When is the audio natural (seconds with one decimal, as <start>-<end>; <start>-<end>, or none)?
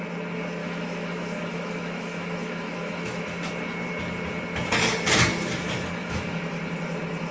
0.0-0.6; 3.5-6.0; 6.6-7.3